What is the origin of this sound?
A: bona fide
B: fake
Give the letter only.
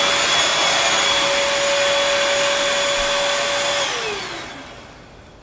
A